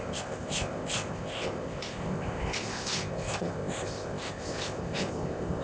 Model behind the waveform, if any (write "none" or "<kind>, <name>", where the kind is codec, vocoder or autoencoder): codec, ZipCodec